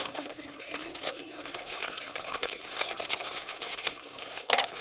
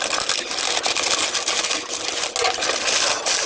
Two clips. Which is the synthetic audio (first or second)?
first